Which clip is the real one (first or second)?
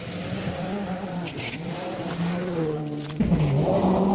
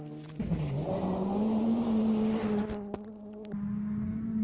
second